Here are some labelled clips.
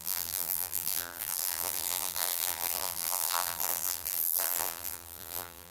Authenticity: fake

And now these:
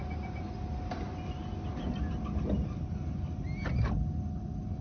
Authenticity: real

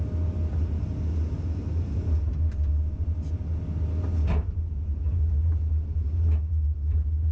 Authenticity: real